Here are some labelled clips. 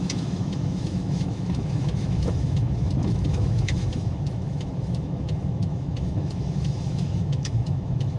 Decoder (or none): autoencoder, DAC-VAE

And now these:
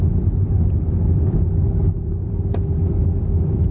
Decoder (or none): none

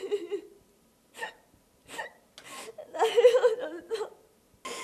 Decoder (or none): none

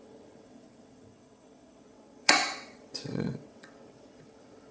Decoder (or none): vocoder, WaveNeXt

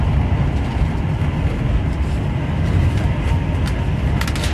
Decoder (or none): none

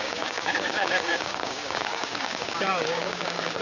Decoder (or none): codec, DAC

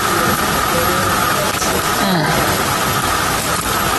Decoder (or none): none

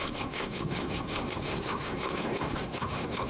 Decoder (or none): codec, SNAC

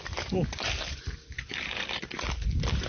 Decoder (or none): none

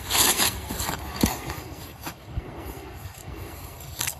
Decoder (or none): codec, SNAC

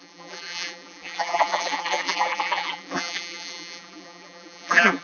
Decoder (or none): vocoder, BigVGAN v2